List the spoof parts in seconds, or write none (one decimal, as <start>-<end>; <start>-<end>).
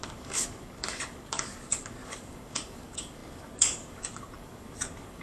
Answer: 0.0-5.2